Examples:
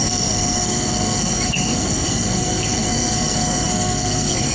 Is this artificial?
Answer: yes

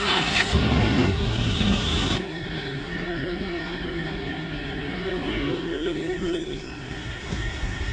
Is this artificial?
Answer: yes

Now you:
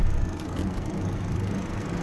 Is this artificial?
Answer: yes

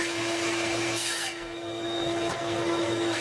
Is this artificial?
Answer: yes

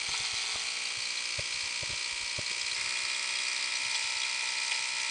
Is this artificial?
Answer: no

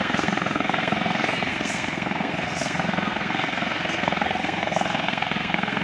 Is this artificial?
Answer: yes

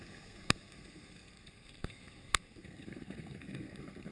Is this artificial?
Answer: yes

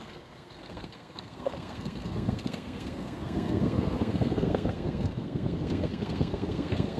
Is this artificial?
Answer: yes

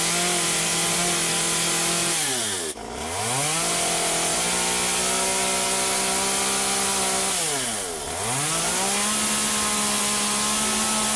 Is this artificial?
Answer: no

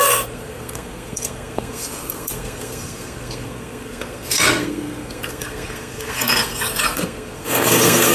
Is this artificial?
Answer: yes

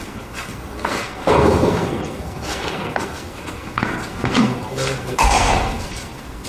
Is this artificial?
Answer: yes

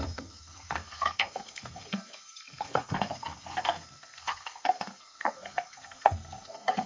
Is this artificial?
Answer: yes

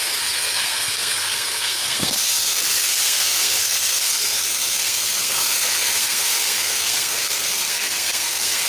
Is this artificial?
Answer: yes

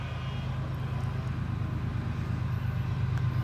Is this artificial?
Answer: no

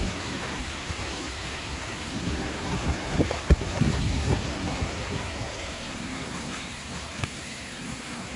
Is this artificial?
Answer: yes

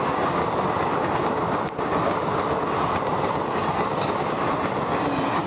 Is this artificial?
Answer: no